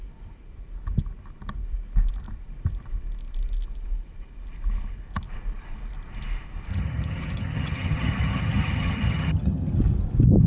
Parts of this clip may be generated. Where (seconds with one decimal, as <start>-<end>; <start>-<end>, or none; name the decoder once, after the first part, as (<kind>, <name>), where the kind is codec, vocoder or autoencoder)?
6.7-9.8 (vocoder, HiFi-GAN)